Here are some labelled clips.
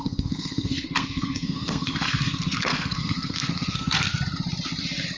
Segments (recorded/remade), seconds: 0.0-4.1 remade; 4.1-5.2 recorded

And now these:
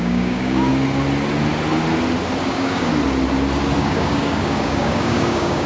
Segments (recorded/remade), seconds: 0.0-0.7 remade; 0.7-2.4 recorded; 2.4-2.9 remade; 2.9-3.8 recorded; 3.8-5.7 remade

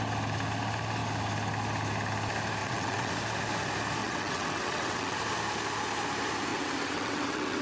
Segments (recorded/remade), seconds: 0.0-2.6 recorded; 2.6-3.1 remade; 3.1-4.0 recorded; 4.0-5.2 remade; 5.2-6.5 recorded; 6.5-7.6 remade

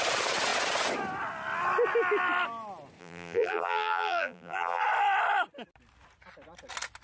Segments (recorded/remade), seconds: 0.0-3.0 recorded; 3.0-4.8 remade; 4.8-7.0 recorded

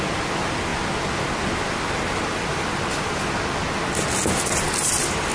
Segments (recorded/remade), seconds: 0.0-5.3 recorded